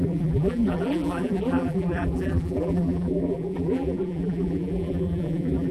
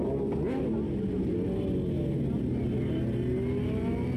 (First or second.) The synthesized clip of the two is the first